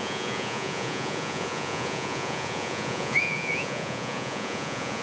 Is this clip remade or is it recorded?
remade